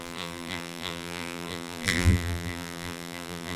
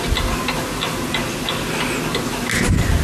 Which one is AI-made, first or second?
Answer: first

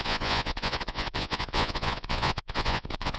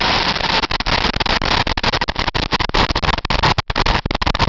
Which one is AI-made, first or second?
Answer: first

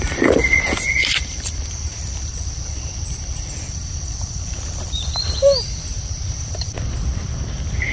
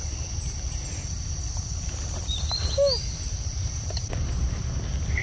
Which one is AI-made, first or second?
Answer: first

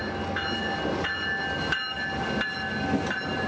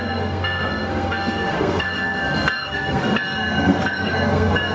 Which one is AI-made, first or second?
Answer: second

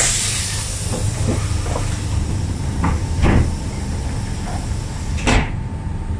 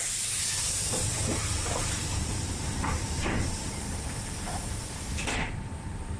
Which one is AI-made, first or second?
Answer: second